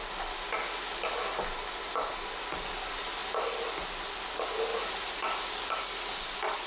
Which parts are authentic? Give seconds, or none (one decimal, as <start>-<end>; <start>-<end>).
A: 0.0-4.7; 5.7-6.7